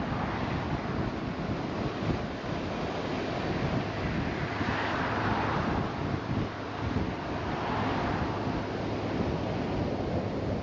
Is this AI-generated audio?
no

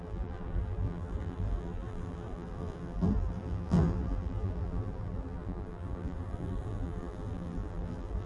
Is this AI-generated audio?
yes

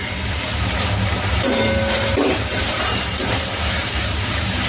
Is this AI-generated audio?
yes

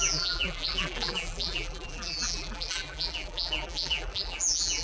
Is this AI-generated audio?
yes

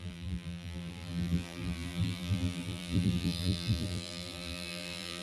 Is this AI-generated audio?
yes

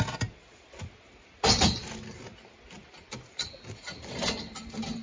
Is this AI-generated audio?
no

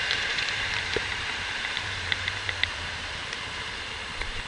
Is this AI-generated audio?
yes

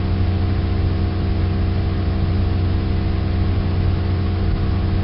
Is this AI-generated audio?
no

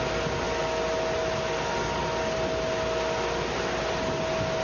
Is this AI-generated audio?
no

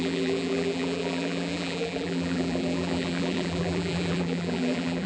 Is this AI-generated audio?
yes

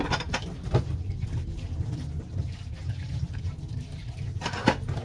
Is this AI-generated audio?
no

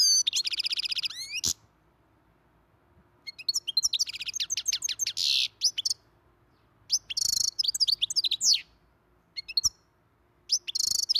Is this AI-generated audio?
no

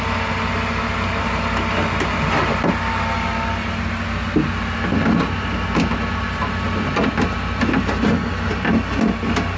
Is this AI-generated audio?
no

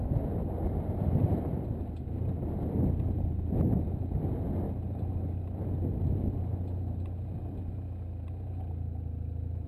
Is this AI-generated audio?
no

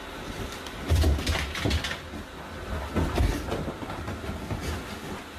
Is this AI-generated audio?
no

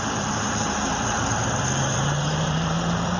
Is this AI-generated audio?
yes